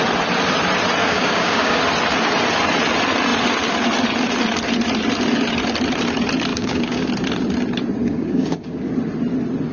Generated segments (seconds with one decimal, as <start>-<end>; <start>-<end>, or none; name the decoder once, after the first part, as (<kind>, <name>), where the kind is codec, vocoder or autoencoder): 1.0-1.8 (codec, DAC); 6.5-7.1; 8.0-8.9